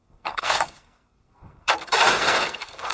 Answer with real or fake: fake